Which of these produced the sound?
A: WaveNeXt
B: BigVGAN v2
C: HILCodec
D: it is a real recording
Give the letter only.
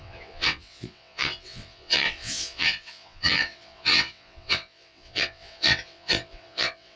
A